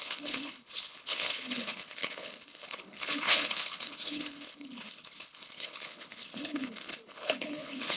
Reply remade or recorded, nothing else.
remade